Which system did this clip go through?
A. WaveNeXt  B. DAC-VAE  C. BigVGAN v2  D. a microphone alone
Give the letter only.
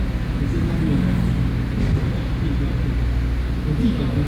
D